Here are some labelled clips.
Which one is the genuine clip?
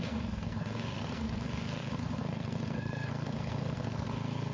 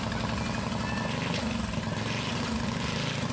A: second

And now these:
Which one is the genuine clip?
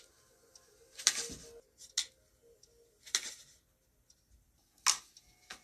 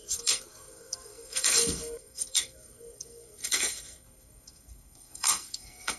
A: first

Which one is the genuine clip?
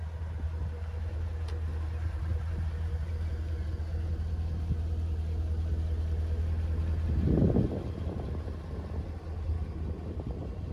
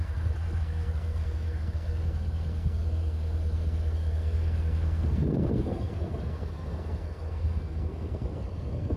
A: first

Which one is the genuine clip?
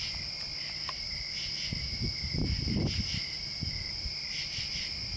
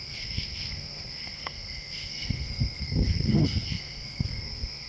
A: first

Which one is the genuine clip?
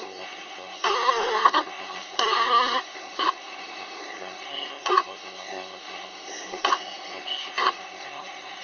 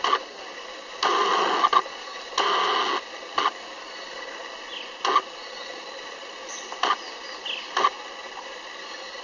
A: second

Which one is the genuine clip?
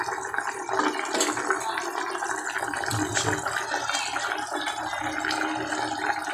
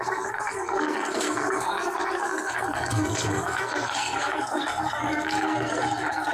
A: first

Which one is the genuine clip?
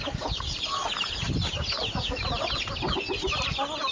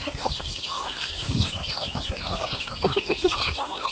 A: first